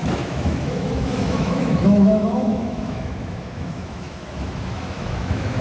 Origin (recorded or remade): remade